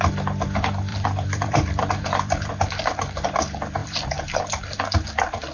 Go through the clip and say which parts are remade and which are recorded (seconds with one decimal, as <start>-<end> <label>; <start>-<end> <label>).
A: 0.0-0.9 recorded; 0.9-2.5 remade; 2.5-3.8 recorded; 3.8-4.4 remade; 4.4-5.5 recorded